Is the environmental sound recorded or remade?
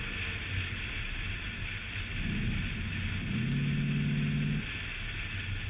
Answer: recorded